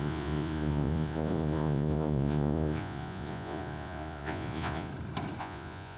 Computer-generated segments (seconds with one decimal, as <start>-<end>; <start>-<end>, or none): 0.0-4.9; 5.4-6.0